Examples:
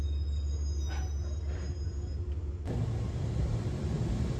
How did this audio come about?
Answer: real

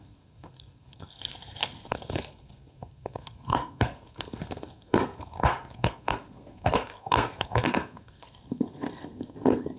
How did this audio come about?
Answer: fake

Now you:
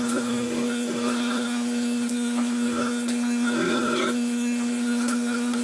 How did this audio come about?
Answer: fake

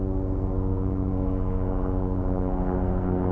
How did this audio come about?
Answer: fake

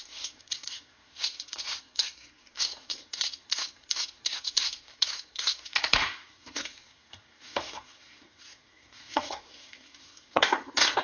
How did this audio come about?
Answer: fake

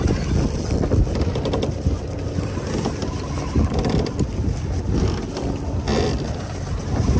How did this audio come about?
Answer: real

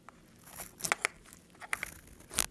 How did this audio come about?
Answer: real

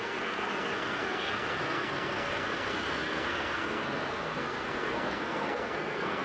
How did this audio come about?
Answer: fake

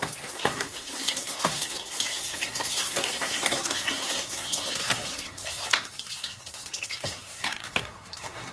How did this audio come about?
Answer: fake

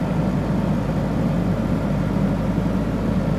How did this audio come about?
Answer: real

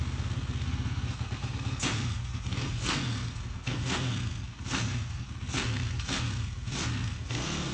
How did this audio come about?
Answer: fake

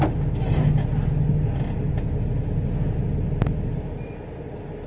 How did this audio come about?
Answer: real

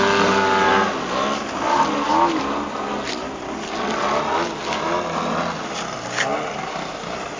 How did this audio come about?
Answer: real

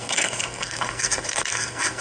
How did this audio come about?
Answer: fake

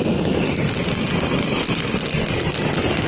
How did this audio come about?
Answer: real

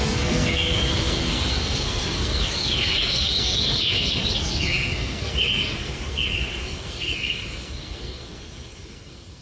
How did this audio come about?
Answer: fake